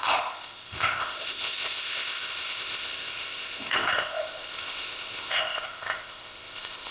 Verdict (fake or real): fake